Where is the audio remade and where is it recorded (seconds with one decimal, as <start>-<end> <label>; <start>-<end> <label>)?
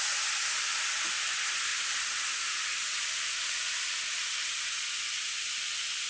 0.0-6.1 recorded